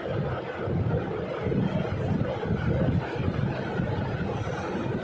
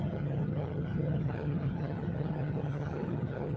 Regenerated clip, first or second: second